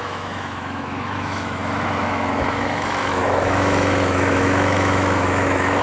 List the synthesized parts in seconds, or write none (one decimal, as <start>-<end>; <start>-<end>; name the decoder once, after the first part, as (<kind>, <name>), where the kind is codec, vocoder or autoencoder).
0.0-5.8 (autoencoder, DAC-VAE)